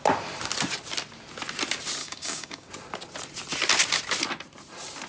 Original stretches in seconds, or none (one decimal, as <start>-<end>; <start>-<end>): 0.0-2.0; 2.7-5.1